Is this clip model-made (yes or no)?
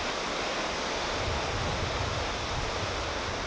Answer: no